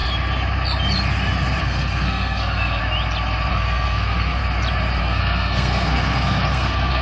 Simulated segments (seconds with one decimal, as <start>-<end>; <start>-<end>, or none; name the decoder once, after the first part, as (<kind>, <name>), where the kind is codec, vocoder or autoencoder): 1.6-2.8 (codec, SNAC); 3.5-4.4; 5.0-7.0